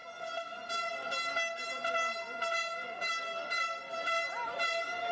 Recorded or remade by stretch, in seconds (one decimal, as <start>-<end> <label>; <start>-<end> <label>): 0.0-5.1 recorded